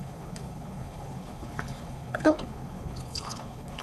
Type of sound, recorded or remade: remade